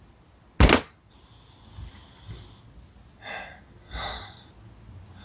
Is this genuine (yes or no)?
yes